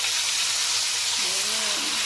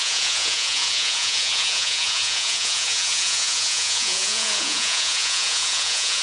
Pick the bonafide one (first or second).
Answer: first